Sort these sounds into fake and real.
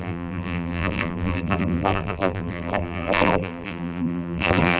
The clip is fake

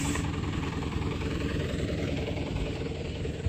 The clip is fake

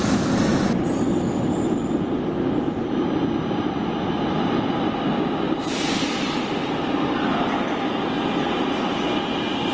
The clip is real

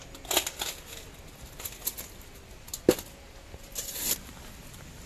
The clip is real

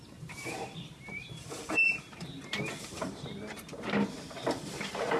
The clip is fake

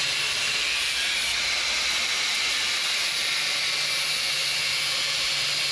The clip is real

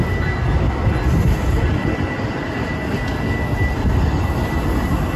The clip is real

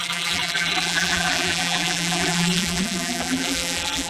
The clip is fake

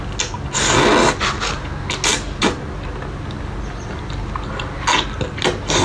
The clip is real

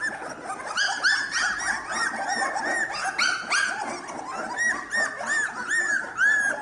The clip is real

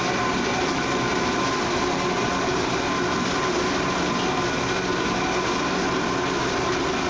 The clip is fake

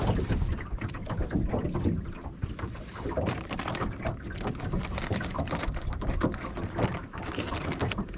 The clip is fake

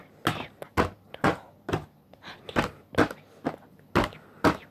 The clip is real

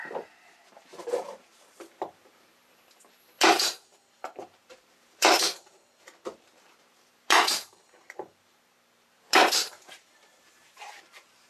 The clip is fake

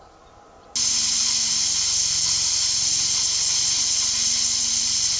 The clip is real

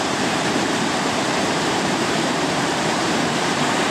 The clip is fake